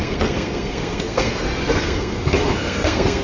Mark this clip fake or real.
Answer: fake